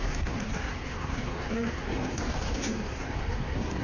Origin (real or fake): fake